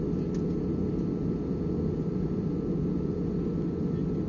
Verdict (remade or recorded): recorded